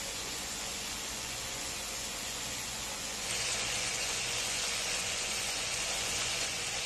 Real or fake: fake